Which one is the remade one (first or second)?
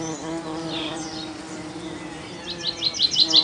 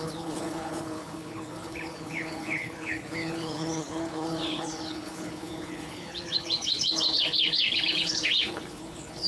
second